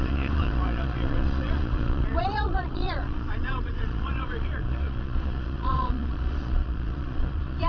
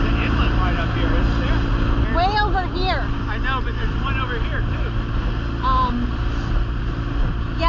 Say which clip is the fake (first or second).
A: first